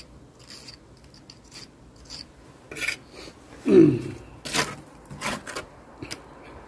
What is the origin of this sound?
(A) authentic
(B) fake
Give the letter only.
A